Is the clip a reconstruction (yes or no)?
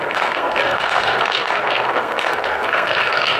yes